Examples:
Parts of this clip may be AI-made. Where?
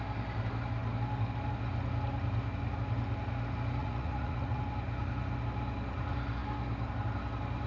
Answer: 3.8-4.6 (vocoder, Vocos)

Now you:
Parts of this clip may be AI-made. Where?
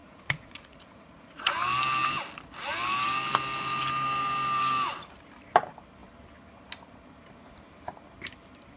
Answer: 0.0-1.5 (vocoder, Vocos)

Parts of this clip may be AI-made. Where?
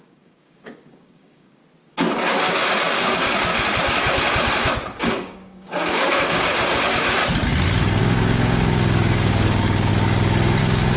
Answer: 0.0-1.6 (codec, DAC); 2.3-3.5; 5.0-7.2; 8.0-9.9; 10.6-11.0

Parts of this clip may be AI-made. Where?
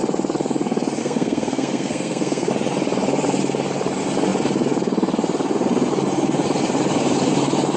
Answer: 1.0-2.5 (codec, SNAC)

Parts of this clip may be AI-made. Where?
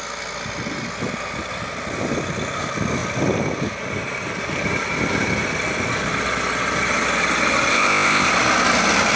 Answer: 7.7-8.3 (codec, ZipCodec)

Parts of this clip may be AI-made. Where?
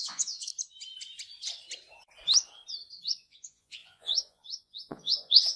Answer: 0.0-0.5 (vocoder, Vocos); 3.0-5.6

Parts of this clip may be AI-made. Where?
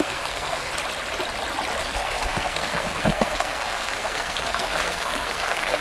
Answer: 0.0-0.7 (codec, SNAC); 1.8-5.8